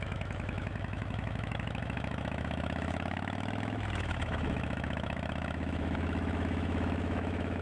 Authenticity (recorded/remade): remade